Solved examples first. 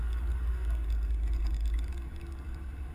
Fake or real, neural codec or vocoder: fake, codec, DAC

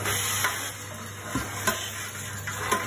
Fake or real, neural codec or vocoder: real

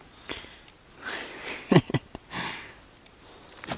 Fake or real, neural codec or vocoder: real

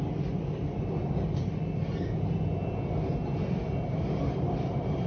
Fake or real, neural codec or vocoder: real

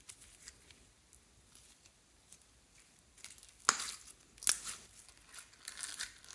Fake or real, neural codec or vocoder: real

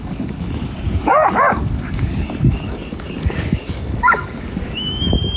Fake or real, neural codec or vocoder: fake, codec, DAC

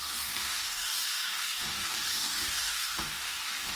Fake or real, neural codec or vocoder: fake, codec, DAC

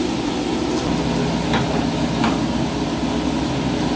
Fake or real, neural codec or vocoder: real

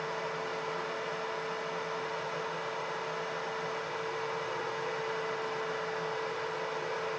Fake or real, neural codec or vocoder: real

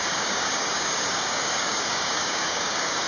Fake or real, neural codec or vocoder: fake, codec, DAC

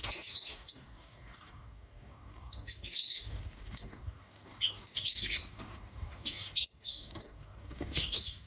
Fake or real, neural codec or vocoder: fake, codec, DAC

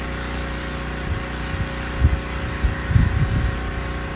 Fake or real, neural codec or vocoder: real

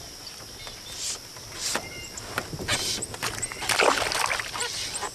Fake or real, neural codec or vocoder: real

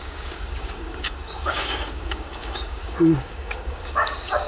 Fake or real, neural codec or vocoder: fake, codec, DAC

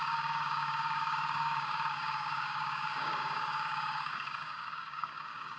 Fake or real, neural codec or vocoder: fake, codec, DAC